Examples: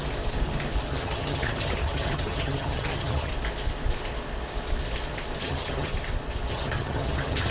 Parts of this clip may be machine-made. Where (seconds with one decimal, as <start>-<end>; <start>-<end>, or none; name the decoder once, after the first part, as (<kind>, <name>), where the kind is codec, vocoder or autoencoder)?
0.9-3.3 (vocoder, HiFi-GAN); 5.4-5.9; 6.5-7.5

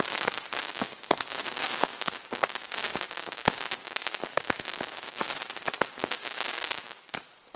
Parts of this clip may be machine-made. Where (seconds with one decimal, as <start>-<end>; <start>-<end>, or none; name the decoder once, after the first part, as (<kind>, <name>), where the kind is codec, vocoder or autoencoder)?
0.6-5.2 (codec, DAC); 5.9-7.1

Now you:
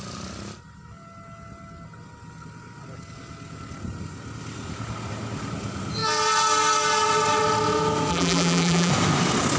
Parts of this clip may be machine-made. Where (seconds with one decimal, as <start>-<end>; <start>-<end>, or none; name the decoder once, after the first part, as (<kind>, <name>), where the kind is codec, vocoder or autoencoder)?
8.1-8.9 (vocoder, BigVGAN v2)